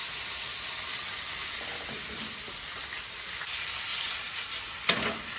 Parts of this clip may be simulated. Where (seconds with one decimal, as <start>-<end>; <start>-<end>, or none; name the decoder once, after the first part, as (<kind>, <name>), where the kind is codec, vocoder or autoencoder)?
none